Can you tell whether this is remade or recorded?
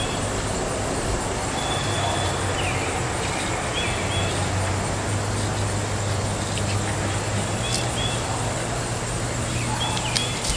recorded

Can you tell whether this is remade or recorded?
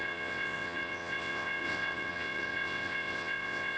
remade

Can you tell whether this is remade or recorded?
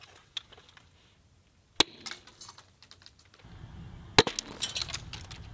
recorded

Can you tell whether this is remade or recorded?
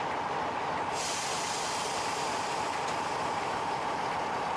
recorded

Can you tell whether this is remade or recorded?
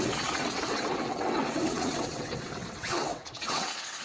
remade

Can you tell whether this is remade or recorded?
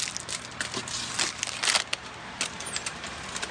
recorded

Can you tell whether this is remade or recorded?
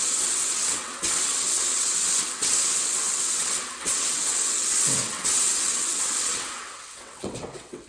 remade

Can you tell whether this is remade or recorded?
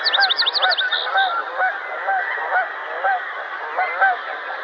recorded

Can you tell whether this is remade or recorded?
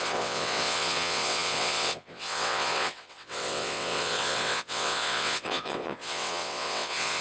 remade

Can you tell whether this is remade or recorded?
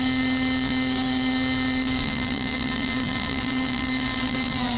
remade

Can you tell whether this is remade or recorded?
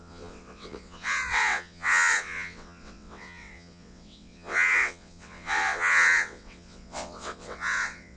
remade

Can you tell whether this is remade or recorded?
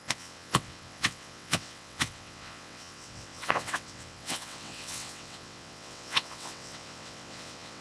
remade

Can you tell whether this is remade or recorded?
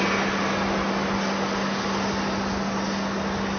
recorded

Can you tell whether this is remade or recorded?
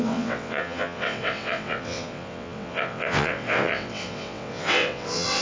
remade